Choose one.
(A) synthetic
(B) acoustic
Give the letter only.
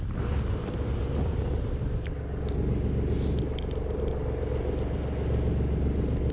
B